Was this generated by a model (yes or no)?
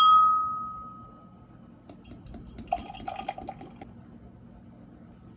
no